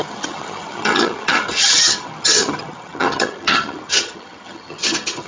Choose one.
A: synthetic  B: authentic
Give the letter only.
A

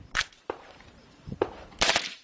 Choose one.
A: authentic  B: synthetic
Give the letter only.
B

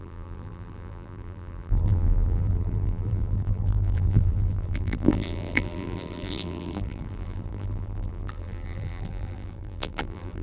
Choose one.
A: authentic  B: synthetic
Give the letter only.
B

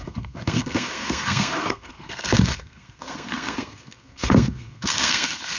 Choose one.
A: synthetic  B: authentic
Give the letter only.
A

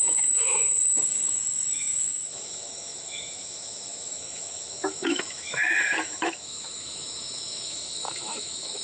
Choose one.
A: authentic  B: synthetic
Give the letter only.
B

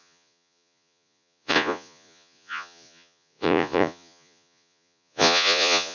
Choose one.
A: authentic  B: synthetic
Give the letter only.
B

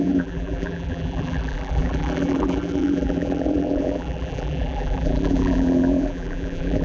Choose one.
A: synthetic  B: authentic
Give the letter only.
A